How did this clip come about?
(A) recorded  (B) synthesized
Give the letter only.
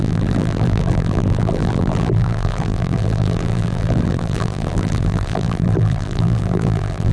B